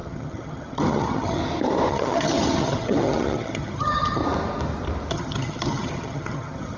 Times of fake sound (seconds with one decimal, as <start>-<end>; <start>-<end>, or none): 0.0-1.4; 1.9-4.2; 5.1-6.8